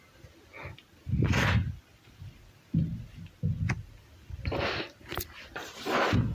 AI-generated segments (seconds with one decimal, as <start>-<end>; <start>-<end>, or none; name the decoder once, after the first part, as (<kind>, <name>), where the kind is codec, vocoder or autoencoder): none